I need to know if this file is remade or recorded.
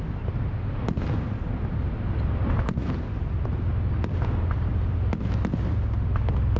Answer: recorded